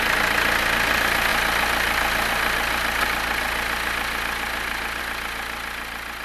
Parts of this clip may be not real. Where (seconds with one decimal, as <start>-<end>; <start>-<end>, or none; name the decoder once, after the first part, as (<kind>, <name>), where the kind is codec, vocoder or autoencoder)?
none